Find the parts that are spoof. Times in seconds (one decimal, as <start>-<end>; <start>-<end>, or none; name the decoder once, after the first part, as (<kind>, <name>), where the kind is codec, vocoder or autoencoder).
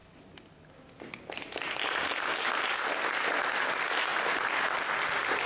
none